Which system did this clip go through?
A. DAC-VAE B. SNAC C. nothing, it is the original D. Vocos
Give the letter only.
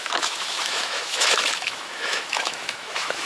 A